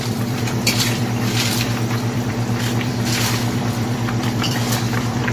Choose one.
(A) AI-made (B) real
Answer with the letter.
A